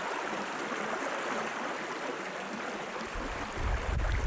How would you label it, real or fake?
real